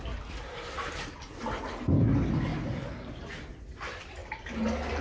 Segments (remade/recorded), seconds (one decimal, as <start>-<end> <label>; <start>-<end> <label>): 0.0-0.4 recorded; 0.4-1.4 remade; 1.4-2.5 recorded; 2.5-3.5 remade; 3.5-5.0 recorded